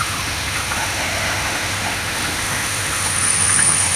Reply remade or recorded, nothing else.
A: remade